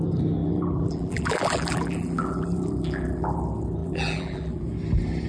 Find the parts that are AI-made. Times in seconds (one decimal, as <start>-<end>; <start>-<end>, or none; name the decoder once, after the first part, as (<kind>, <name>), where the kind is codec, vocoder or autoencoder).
0.4-3.4 (vocoder, BigVGAN v2); 3.8-4.6